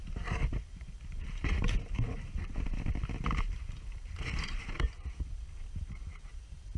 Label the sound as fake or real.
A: fake